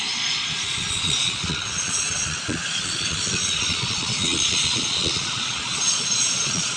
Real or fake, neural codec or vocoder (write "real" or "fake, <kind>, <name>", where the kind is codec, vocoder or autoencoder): fake, vocoder, Vocos